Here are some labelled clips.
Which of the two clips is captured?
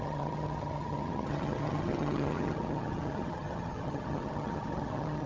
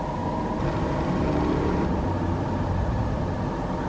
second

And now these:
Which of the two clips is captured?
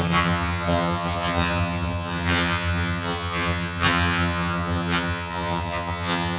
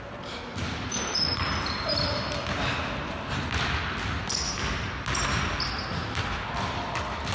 second